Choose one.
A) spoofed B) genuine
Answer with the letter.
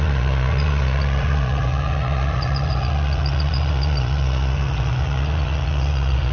A